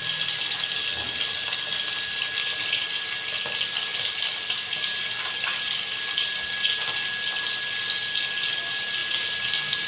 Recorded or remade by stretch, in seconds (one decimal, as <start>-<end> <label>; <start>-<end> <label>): 0.0-9.9 recorded